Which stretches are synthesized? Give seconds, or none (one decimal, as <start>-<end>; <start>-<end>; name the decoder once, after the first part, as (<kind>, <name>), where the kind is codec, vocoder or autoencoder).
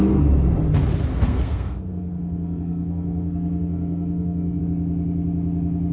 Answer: 1.1-4.6 (codec, SNAC)